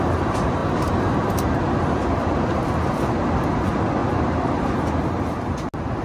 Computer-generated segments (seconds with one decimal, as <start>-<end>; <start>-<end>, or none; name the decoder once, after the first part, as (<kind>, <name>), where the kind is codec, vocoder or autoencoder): none